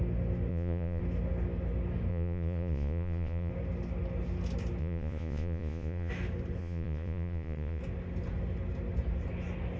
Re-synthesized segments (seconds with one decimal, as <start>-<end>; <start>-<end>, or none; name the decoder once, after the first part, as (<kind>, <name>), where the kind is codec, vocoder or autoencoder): 0.5-1.0 (vocoder, Vocos); 2.1-3.5; 4.8-6.1; 6.6-7.8